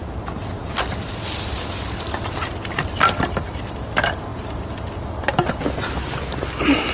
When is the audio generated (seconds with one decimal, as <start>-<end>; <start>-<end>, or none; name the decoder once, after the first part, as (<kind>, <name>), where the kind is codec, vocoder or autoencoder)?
none